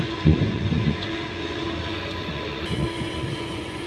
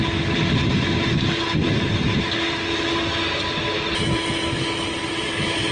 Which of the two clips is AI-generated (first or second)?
first